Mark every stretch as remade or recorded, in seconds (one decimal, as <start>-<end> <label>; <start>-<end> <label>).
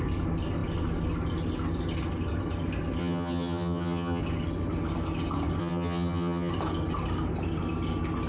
0.0-3.0 recorded; 3.0-4.2 remade; 4.2-5.6 recorded; 5.6-6.5 remade; 6.5-8.3 recorded